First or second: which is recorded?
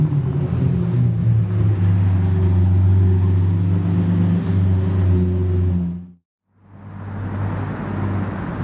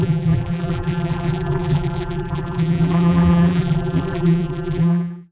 first